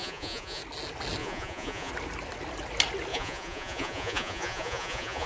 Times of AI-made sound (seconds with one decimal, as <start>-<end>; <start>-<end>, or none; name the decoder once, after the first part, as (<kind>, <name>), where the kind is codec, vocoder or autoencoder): 0.0-0.6 (vocoder, Vocos); 1.2-1.9; 3.1-5.3